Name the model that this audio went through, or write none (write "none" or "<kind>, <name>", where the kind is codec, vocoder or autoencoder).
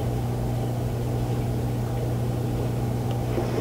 none